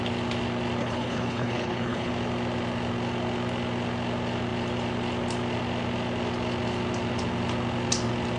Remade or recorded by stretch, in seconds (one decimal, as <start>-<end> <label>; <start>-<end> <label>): 0.0-0.8 recorded; 0.8-2.1 remade; 2.1-8.4 recorded